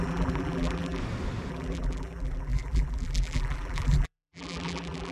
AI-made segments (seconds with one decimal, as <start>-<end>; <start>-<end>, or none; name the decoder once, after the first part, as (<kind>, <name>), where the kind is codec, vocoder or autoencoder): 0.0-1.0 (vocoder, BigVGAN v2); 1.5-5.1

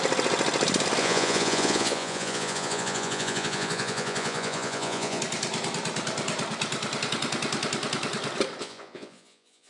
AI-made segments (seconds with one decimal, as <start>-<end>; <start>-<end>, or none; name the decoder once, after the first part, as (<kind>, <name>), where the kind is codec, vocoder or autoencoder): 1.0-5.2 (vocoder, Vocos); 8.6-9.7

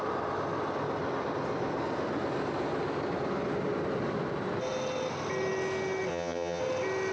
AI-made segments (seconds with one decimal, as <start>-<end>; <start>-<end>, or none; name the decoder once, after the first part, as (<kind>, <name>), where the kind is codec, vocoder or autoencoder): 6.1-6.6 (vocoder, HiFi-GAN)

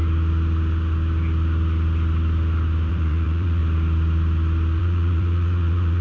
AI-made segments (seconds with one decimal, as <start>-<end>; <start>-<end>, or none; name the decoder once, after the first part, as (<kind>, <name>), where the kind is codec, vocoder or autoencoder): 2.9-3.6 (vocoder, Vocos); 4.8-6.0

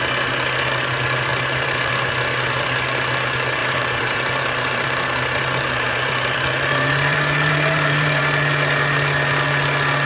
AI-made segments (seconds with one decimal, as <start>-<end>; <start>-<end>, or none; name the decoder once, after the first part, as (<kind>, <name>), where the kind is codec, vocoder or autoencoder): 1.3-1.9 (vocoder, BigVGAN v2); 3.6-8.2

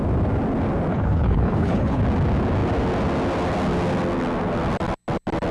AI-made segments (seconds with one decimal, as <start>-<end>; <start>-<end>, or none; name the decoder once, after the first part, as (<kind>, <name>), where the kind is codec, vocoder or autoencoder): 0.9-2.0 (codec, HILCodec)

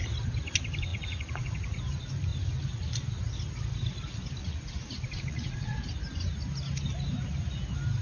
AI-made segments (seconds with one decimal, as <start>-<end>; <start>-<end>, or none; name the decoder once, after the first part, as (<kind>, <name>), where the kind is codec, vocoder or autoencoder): 0.9-1.8 (vocoder, Vocos); 4.4-5.8